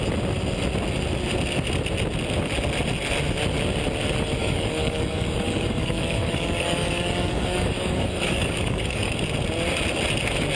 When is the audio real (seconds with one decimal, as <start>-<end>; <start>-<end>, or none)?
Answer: 0.0-4.4; 9.1-10.5